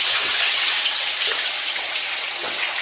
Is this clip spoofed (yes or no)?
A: yes